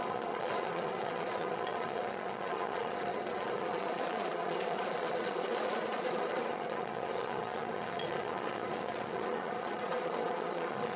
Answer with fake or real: fake